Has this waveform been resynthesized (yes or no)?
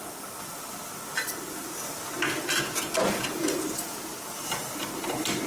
no